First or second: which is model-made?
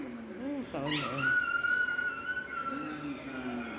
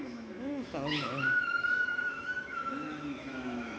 second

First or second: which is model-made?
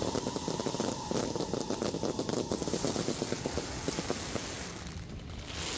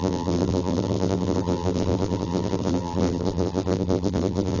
second